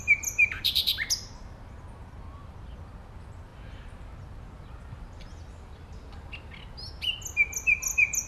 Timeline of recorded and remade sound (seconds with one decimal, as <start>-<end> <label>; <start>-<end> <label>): 0.0-0.9 remade; 0.9-8.3 recorded

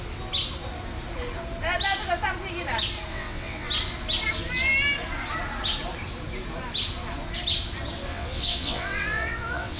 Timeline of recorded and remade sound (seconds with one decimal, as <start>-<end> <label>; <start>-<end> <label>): 0.0-3.1 recorded; 3.1-3.7 remade; 3.7-8.1 recorded; 8.1-9.8 remade

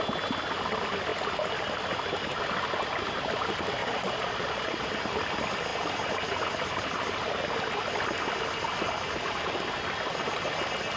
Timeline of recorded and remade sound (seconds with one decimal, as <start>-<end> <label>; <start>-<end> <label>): 0.0-3.8 recorded; 3.8-4.9 remade; 4.9-11.0 recorded

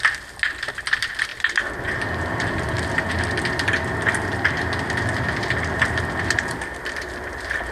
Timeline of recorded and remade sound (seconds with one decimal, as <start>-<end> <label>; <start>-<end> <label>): 0.0-7.7 recorded

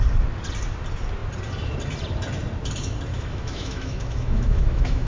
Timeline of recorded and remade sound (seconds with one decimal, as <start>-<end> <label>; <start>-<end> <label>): 0.0-3.1 recorded; 3.1-5.1 remade

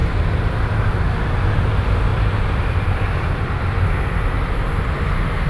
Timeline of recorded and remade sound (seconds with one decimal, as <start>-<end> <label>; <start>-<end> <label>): 0.0-2.1 recorded; 2.1-4.2 remade; 4.2-5.5 recorded

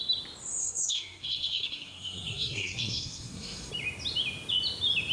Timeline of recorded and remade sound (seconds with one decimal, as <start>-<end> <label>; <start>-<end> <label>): 0.0-0.6 recorded; 0.6-3.7 remade; 3.7-5.1 recorded